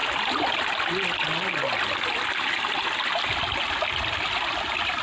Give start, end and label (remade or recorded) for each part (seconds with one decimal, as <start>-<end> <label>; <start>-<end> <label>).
0.0-5.0 recorded